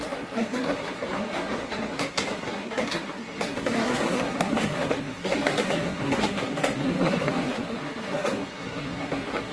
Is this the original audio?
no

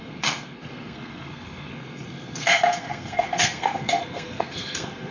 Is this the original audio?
no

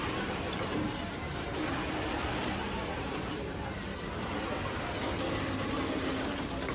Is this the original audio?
yes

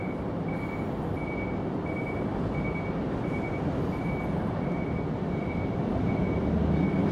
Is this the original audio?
yes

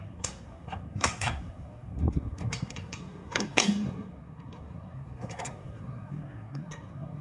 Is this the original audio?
no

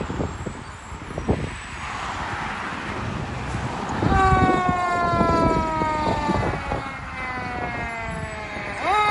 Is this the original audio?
yes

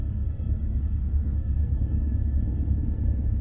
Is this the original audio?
no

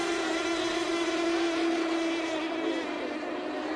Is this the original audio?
yes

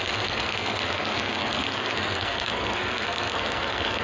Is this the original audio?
no